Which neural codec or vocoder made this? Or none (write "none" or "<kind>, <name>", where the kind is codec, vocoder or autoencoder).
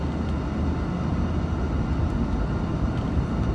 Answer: none